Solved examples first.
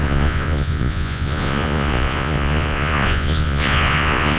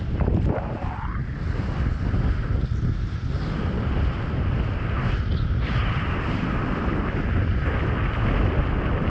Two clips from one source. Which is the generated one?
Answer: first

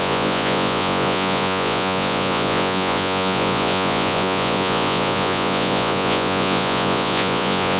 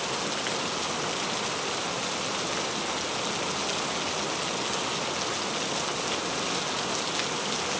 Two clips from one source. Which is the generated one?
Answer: first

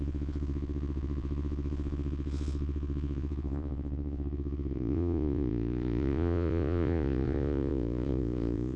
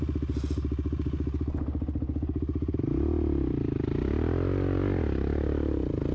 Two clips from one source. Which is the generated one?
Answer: first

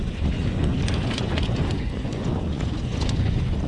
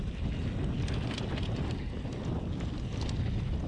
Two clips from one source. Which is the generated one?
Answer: first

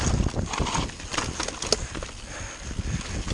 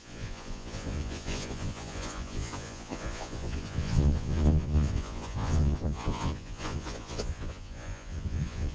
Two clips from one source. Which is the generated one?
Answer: second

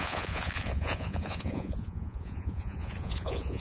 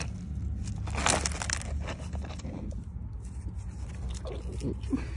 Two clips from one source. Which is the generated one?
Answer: first